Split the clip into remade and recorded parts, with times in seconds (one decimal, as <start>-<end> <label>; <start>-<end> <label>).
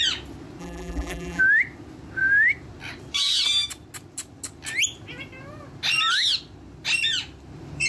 0.0-0.6 recorded; 0.6-1.4 remade; 1.4-7.9 recorded